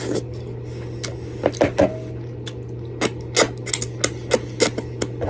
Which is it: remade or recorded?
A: recorded